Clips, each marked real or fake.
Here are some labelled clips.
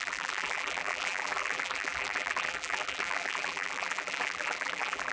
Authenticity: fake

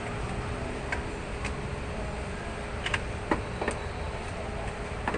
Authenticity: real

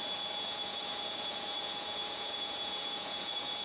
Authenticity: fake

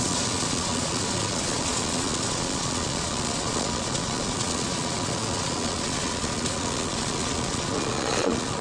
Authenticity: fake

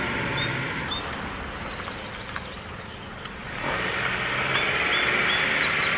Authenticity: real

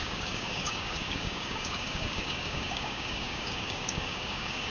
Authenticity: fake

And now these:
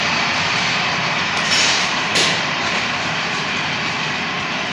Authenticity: fake